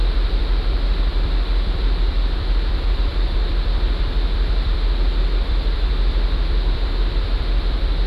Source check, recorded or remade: remade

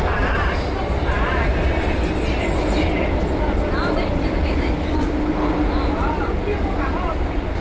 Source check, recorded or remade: recorded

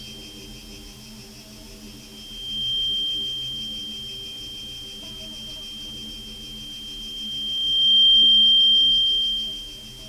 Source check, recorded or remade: recorded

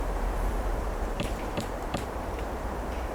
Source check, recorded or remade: remade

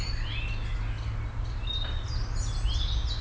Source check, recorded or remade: recorded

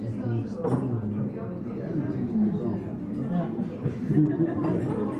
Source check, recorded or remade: recorded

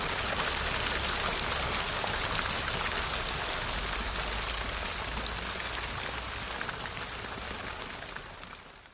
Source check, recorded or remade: recorded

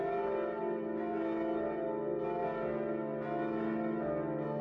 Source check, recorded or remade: recorded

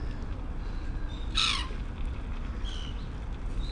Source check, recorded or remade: recorded